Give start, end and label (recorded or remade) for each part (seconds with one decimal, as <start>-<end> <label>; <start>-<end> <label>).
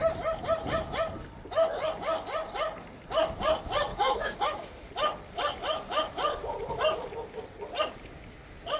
0.0-3.9 recorded; 3.9-4.9 remade; 4.9-8.8 recorded